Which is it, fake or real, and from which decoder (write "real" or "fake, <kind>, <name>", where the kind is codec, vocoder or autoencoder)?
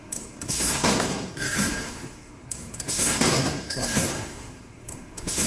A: fake, codec, SNAC